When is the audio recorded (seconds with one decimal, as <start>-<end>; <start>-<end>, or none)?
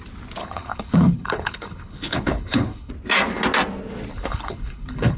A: 0.0-0.4; 2.9-4.1